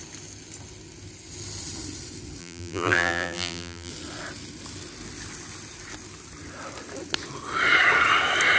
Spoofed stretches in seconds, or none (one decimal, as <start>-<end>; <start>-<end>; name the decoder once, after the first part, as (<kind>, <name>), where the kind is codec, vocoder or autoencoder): 2.4-3.9 (vocoder, BigVGAN v2)